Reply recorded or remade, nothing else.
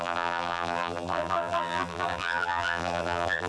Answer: remade